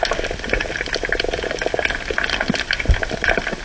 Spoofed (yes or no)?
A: no